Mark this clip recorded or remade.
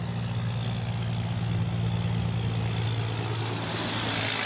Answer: recorded